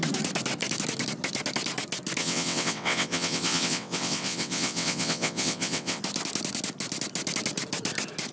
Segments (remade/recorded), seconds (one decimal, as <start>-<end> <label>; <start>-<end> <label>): 0.0-2.2 recorded; 2.2-6.0 remade; 6.0-8.3 recorded